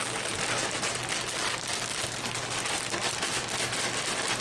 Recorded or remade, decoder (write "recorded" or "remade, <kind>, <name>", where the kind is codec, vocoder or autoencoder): recorded